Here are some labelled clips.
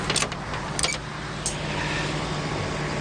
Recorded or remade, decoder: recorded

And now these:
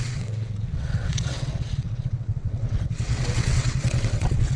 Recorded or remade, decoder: remade, vocoder, WaveNeXt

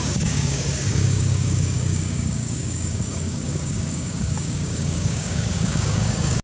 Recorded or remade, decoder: remade, codec, DAC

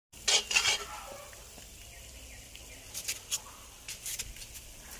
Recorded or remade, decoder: recorded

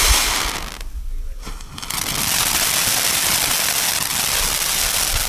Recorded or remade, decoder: recorded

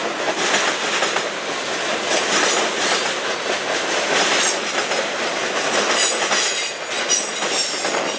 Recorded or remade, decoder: recorded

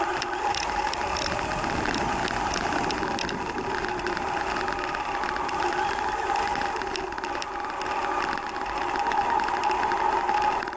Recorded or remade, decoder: recorded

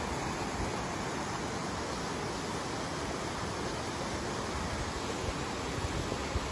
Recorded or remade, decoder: recorded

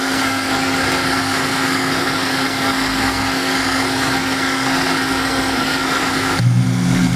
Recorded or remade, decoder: remade, codec, SNAC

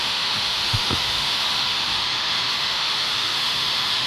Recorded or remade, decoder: remade, autoencoder, DAC-VAE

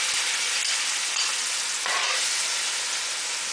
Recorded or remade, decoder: recorded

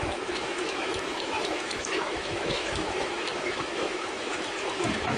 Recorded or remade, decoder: remade, autoencoder, DAC-VAE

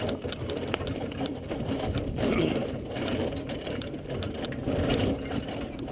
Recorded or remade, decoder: remade, vocoder, BigVGAN v2